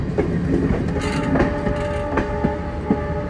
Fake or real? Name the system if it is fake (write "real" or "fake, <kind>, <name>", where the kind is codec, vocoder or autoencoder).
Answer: real